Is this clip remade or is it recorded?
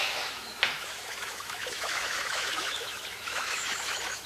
remade